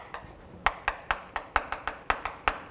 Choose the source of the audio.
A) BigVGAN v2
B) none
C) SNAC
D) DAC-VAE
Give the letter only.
B